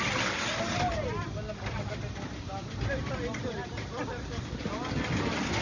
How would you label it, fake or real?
real